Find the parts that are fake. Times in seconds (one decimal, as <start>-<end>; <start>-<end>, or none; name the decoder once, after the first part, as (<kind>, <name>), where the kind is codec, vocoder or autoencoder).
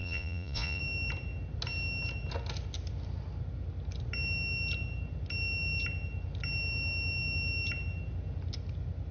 0.0-0.8 (vocoder, Vocos)